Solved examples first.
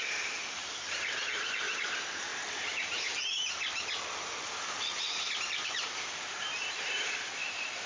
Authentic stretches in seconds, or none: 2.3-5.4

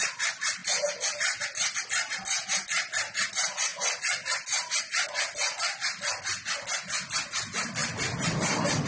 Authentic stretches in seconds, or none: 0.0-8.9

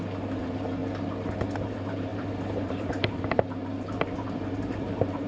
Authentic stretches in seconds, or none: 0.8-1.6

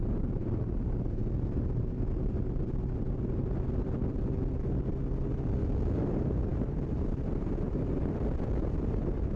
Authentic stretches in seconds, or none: 1.2-6.1